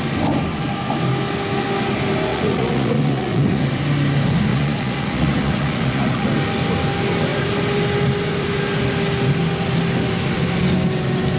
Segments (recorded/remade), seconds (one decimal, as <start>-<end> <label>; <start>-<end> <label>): 0.0-2.3 recorded; 2.3-3.6 remade; 3.6-4.5 recorded; 4.5-6.3 remade; 6.3-11.4 recorded